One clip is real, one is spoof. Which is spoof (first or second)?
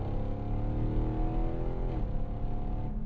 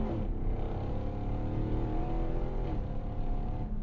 second